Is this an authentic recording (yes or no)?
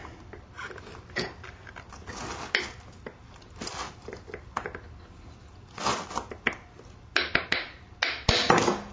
yes